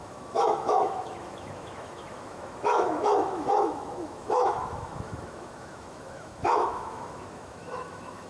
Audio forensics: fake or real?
fake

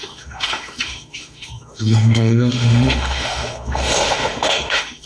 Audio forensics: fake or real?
fake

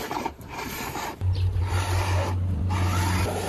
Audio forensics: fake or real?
real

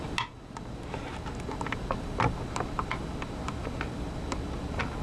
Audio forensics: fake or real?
real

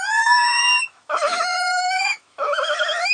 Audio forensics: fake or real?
fake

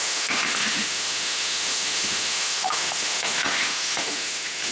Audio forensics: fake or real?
fake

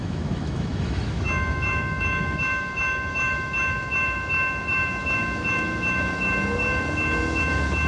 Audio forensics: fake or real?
fake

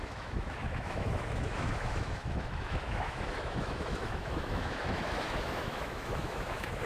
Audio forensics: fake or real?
fake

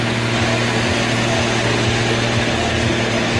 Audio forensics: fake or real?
real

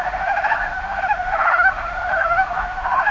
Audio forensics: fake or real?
fake